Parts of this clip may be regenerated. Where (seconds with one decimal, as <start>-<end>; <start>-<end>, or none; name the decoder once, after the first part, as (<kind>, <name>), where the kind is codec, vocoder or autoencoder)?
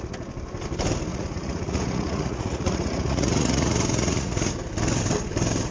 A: 1.1-4.5 (vocoder, Vocos)